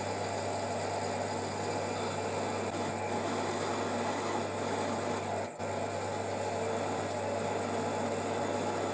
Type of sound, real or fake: real